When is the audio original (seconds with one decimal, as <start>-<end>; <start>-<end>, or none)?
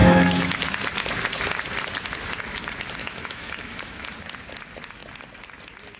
0.6-3.0; 4.1-6.0